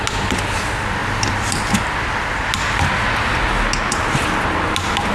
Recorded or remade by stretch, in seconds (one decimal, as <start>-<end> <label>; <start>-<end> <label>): 0.0-1.0 recorded; 1.0-2.4 remade; 2.4-5.1 recorded